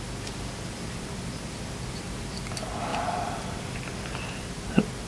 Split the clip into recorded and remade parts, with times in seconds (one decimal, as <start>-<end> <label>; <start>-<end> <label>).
0.0-5.1 recorded